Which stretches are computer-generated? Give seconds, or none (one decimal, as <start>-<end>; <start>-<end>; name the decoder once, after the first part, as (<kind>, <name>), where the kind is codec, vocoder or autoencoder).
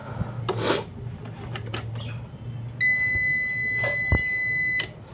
none